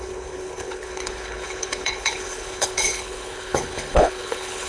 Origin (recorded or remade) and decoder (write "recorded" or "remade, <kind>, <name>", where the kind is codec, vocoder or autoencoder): remade, codec, HILCodec